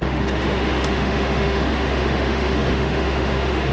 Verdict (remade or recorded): remade